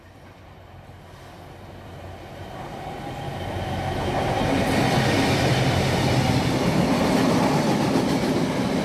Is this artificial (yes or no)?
no